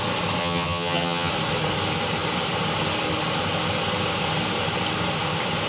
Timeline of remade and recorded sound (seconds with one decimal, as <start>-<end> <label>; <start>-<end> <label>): 0.0-0.4 recorded; 0.4-1.3 remade; 1.3-5.7 recorded